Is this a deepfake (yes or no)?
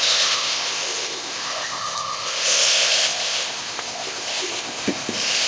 yes